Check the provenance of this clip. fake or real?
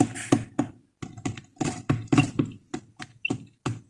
real